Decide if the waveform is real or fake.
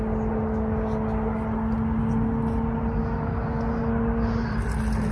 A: real